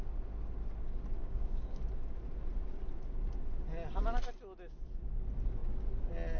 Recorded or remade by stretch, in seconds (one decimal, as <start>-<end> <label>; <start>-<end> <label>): 0.0-1.2 recorded; 1.2-1.8 remade; 1.8-6.4 recorded